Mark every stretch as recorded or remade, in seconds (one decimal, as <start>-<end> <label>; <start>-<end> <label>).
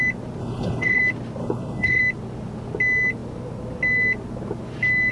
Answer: 0.0-0.4 recorded; 0.4-1.0 remade; 1.0-1.4 recorded; 1.4-2.0 remade; 2.0-5.1 recorded